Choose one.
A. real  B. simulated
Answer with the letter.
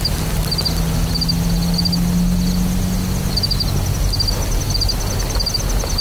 A